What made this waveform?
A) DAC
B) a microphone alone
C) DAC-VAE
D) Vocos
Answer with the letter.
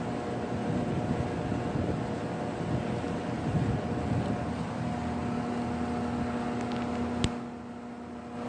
B